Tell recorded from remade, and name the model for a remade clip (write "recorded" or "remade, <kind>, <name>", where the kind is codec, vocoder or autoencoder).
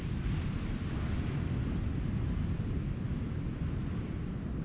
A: recorded